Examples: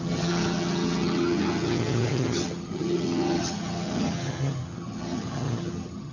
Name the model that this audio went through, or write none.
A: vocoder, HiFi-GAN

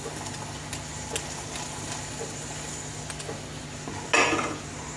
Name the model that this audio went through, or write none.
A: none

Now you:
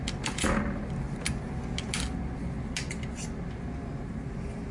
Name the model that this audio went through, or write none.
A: none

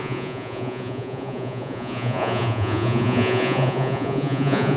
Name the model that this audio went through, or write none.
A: vocoder, Vocos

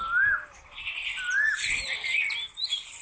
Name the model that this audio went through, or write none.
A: vocoder, BigVGAN v2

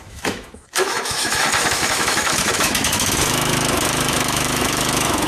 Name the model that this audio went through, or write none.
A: autoencoder, DAC-VAE